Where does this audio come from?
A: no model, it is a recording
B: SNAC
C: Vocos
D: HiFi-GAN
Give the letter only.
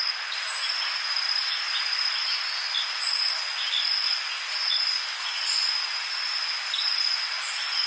A